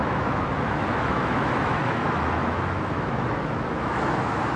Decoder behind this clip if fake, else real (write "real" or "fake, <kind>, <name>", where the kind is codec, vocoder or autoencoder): fake, autoencoder, DAC-VAE